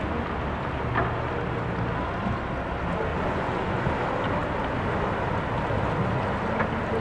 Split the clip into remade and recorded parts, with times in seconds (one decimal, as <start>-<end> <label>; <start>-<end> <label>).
0.0-3.1 recorded; 3.1-3.8 remade; 3.8-7.0 recorded